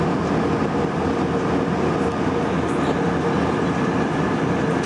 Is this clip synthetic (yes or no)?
no